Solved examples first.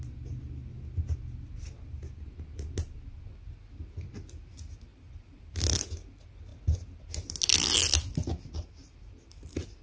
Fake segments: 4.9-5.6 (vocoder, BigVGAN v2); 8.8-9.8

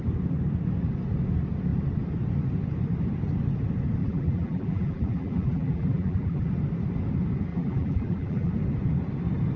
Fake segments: 4.0-6.5 (vocoder, BigVGAN v2); 7.5-8.5

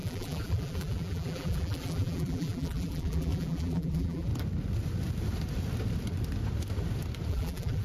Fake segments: 0.0-4.3 (vocoder, BigVGAN v2); 7.3-7.8

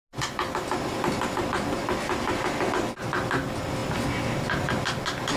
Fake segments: none

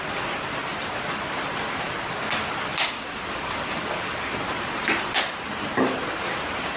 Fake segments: 2.7-4.9 (vocoder, BigVGAN v2)

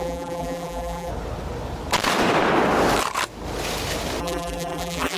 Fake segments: 0.0-1.1 (vocoder, BigVGAN v2); 4.2-5.2

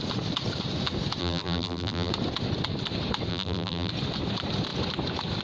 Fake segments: 1.2-2.1 (vocoder, BigVGAN v2); 3.3-3.9